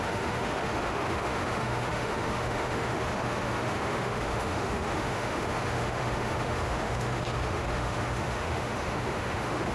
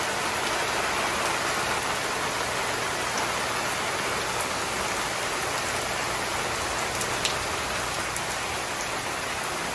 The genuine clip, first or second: second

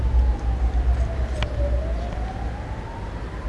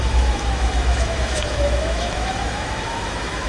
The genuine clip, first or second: first